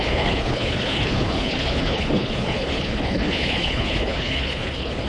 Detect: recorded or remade remade